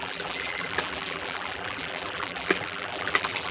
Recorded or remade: remade